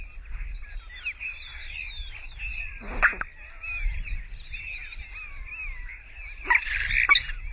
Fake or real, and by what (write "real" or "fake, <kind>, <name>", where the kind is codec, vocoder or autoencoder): real